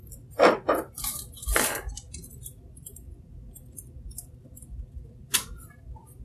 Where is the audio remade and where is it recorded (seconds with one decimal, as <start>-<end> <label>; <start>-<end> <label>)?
0.0-6.2 recorded